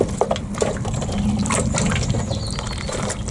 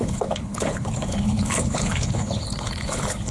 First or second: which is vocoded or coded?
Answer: second